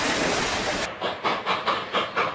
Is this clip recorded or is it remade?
recorded